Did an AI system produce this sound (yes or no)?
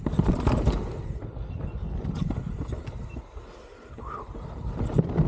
no